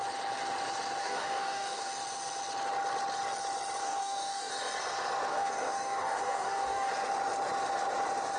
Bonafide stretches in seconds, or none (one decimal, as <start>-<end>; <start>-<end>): 0.0-1.0; 1.9-3.8; 4.5-5.3; 6.9-8.4